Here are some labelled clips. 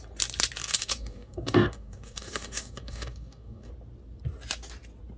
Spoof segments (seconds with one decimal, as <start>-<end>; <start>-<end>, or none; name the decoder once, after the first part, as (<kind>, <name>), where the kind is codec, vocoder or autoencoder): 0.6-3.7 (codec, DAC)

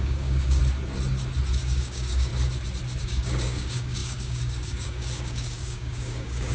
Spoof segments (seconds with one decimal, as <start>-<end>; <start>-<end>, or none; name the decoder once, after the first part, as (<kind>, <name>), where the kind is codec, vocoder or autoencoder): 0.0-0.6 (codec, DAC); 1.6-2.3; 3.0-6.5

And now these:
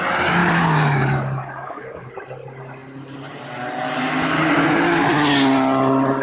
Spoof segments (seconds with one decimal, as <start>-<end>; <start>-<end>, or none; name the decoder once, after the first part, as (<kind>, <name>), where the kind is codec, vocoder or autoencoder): 0.4-2.1 (codec, DAC)

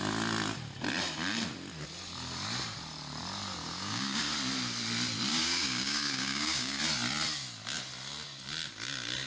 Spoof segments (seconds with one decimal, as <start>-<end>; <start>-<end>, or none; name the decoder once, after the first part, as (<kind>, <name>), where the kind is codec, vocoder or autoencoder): 3.6-4.2 (codec, DAC); 5.3-6.8

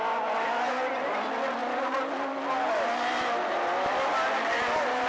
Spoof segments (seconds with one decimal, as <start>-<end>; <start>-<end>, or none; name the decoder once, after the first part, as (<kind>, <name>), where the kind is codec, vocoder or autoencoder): none

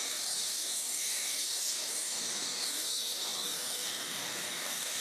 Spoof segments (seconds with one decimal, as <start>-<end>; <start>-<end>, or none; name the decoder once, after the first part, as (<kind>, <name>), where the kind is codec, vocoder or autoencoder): 0.0-5.0 (codec, DAC)

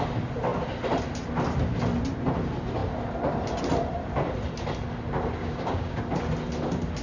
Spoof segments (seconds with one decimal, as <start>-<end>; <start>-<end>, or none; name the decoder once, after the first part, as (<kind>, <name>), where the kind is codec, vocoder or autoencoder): 5.4-6.0 (codec, DAC)

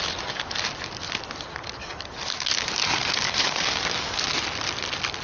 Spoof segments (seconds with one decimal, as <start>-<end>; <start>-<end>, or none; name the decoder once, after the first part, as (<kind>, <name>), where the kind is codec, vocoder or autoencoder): 1.8-4.3 (codec, DAC)